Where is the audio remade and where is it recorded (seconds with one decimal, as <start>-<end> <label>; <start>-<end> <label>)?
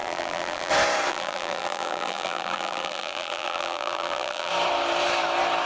0.0-0.7 remade; 0.7-1.1 recorded; 1.1-4.5 remade; 4.5-5.7 recorded